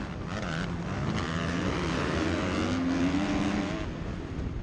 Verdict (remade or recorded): recorded